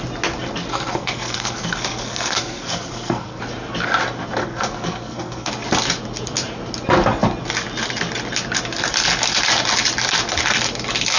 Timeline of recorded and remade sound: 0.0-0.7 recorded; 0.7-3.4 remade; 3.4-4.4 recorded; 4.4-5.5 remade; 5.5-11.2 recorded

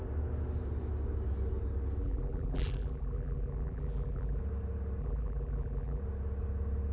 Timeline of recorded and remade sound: 0.0-2.0 recorded; 2.0-4.4 remade; 4.4-5.0 recorded; 5.0-6.0 remade; 6.0-6.9 recorded

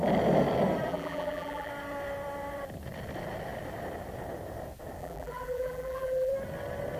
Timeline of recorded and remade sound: 0.0-0.9 recorded; 0.9-1.7 remade; 1.7-5.0 recorded; 5.0-6.3 remade; 6.3-7.0 recorded

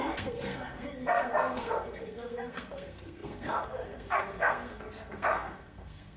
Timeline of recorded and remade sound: 0.0-6.2 remade

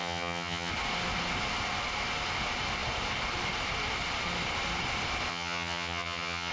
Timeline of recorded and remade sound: 0.0-0.7 remade; 0.7-5.3 recorded; 5.3-6.5 remade

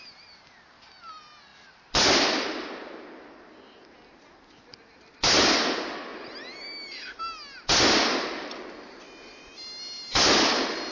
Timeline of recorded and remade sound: 0.0-10.9 recorded